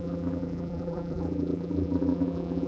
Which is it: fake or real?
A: fake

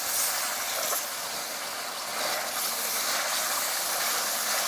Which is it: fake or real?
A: real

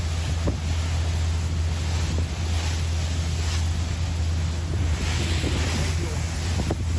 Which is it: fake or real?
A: real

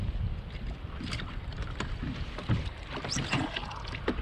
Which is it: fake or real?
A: fake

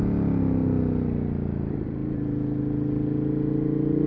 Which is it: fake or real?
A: real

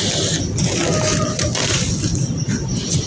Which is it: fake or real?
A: real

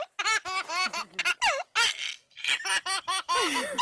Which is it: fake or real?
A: real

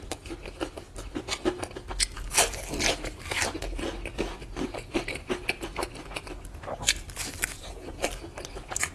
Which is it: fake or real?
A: real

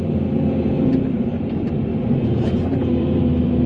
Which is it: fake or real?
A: fake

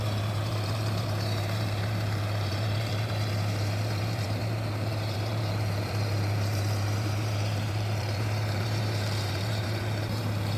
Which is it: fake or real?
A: fake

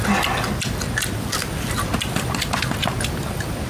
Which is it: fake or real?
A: real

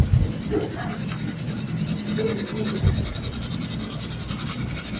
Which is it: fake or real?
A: real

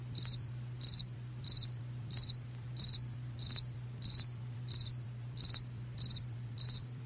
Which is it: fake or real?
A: fake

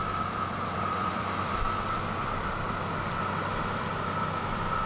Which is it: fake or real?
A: fake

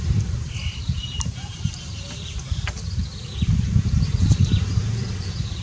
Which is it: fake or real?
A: fake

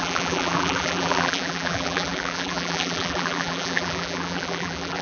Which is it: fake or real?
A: fake